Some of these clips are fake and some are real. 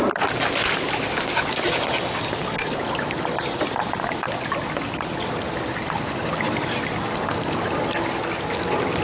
real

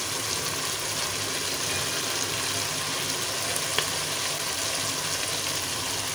real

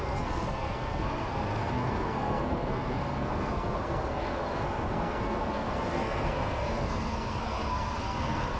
fake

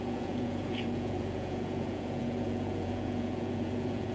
fake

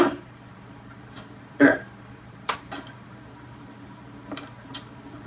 fake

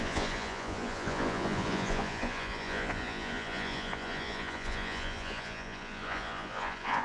fake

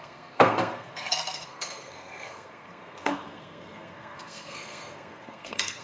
fake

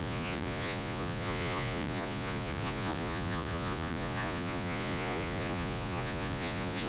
fake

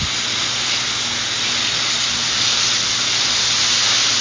real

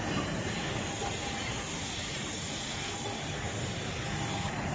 real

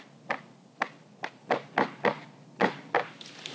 real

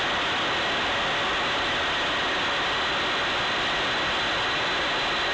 real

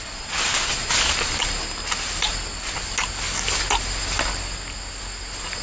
real